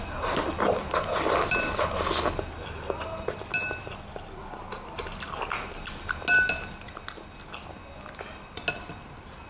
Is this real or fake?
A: real